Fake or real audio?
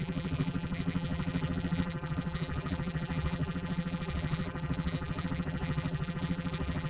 fake